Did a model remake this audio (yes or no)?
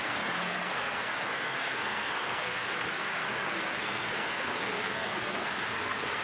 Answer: yes